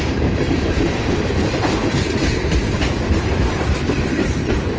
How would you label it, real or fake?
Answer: fake